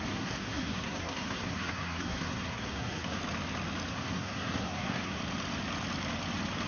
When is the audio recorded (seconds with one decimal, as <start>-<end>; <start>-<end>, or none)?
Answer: 3.2-3.9; 5.2-6.7